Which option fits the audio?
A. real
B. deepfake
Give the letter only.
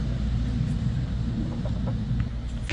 A